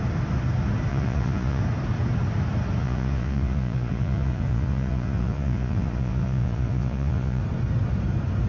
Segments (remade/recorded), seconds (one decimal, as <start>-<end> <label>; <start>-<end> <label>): 0.0-0.9 recorded; 0.9-1.6 remade; 1.6-2.8 recorded; 2.8-7.4 remade; 7.4-8.5 recorded